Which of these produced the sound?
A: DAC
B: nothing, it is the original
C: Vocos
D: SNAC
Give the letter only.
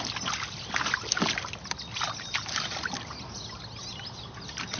B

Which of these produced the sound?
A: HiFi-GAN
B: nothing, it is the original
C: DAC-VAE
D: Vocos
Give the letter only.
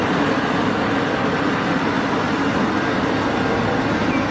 B